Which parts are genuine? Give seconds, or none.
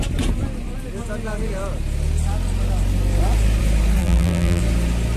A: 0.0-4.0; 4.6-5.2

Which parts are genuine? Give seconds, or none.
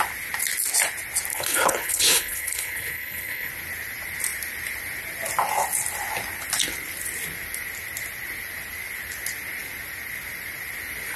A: 0.0-1.3; 3.5-11.2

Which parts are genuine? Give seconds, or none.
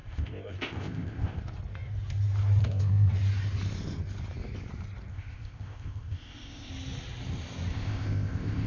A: 1.4-2.6; 3.1-5.1; 6.7-7.7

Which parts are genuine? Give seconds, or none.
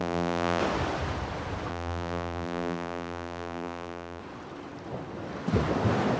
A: 0.6-1.7; 4.2-6.2